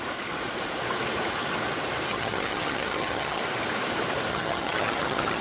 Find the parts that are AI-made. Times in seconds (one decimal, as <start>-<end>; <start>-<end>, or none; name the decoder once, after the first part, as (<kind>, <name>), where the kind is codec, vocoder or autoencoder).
2.1-3.4 (vocoder, HiFi-GAN); 4.3-5.4